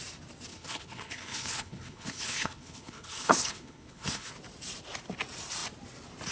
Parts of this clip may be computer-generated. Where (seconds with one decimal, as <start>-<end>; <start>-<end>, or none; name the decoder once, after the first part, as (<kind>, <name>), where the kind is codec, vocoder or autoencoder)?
0.5-4.3 (codec, HILCodec)